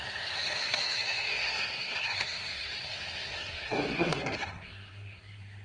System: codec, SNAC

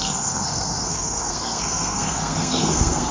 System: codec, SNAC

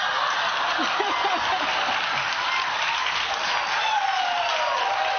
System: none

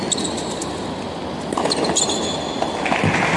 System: none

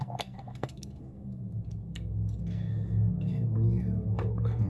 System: codec, SNAC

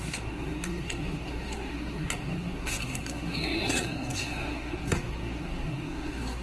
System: codec, SNAC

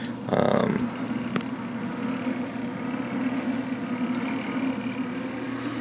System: none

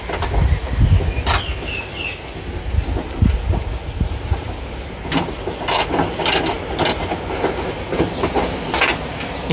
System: none